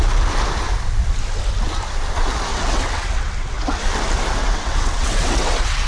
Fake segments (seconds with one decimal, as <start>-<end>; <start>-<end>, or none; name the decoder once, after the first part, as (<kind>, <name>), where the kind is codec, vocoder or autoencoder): 2.5-3.8 (vocoder, WaveNeXt); 4.4-5.9